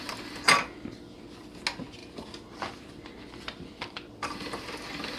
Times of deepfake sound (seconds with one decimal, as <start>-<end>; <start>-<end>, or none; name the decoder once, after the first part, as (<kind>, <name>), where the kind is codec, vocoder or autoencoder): 2.0-5.2 (vocoder, BigVGAN v2)